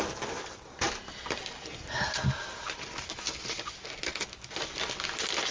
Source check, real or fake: real